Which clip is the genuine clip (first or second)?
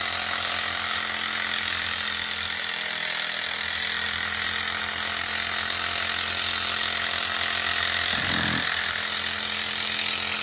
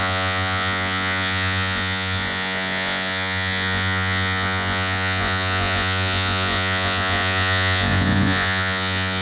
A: first